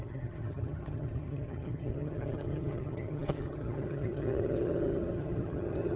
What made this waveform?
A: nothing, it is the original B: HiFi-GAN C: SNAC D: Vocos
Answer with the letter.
B